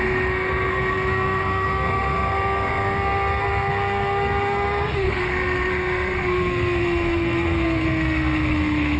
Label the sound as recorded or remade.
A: remade